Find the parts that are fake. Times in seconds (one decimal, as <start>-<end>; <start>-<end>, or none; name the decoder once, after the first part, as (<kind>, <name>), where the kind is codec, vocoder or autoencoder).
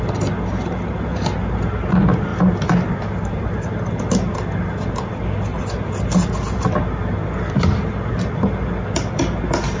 none